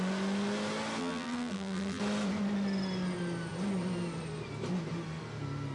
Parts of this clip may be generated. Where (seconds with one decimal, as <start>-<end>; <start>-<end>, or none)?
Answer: 1.0-2.0